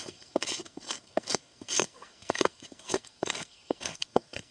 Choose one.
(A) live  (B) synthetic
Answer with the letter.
B